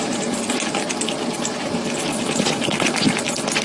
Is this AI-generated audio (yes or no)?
no